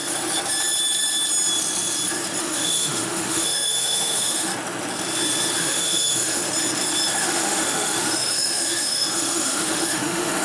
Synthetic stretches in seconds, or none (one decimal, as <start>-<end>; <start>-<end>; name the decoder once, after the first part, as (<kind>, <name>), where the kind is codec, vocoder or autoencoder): 2.4-4.5 (autoencoder, DAC-VAE); 5.6-6.4; 7.2-10.4